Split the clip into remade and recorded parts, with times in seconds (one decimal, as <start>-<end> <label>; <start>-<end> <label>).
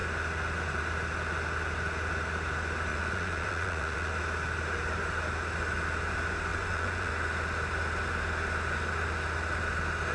0.0-2.9 recorded; 2.9-4.1 remade; 4.1-6.5 recorded; 6.5-7.1 remade; 7.1-10.1 recorded